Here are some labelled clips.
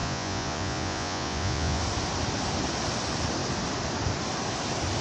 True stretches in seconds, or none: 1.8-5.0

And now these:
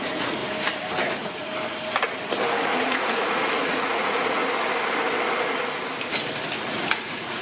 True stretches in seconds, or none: 0.4-1.1; 1.5-2.6; 4.4-6.6

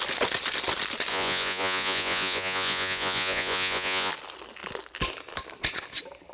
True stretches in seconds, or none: 0.0-1.1; 4.1-6.3

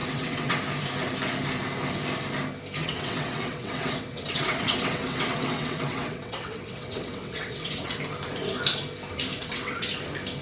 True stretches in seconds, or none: 0.6-2.8; 8.0-9.4; 9.9-10.4

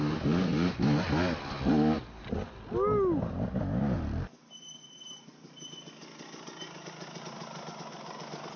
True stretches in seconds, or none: 0.0-8.6

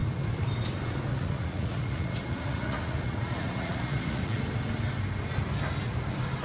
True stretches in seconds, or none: 0.0-1.1; 4.4-6.4

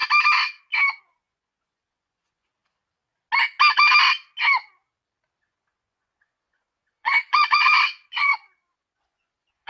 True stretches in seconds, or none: 0.0-0.9; 2.5-5.4